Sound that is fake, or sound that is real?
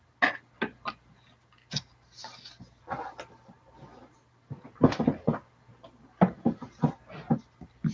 real